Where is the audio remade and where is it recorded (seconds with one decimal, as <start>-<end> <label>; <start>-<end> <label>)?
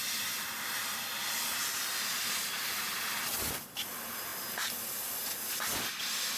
0.0-6.4 recorded